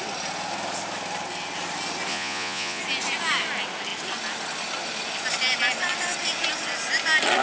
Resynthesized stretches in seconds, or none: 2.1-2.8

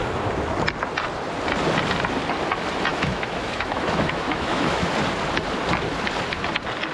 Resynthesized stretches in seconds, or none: 2.9-4.9

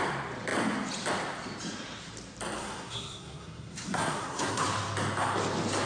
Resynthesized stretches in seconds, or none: 2.6-4.6

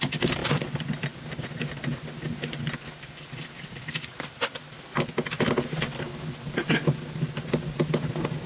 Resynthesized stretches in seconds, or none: 0.4-0.9

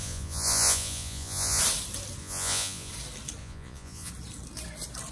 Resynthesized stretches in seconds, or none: 0.0-1.6; 2.2-2.9; 3.4-4.1